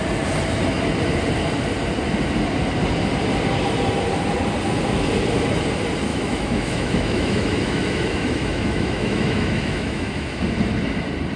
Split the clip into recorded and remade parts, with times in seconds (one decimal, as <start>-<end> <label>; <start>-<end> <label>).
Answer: 0.0-6.1 recorded; 6.1-10.4 remade; 10.4-11.4 recorded